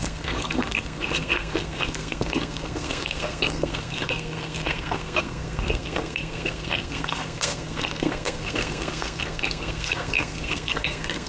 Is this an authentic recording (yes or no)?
no